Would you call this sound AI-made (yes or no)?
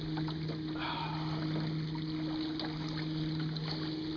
no